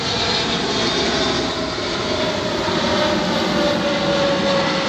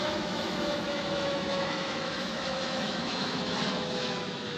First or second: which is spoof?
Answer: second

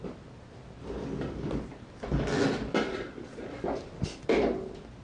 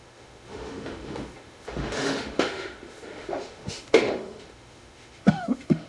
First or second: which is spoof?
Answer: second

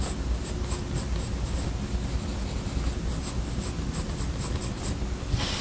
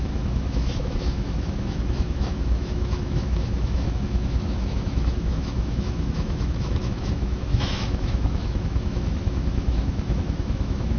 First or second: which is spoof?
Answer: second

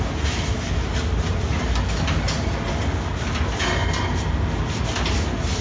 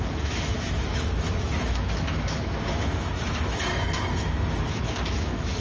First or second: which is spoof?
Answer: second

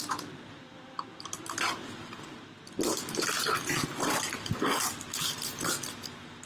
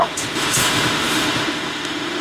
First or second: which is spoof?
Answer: second